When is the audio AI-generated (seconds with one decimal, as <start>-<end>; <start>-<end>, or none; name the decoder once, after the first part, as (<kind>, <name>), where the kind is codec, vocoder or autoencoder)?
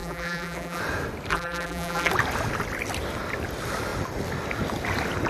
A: 0.0-0.8 (vocoder, BigVGAN v2); 1.3-2.1